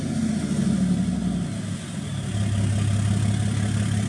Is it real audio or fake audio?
real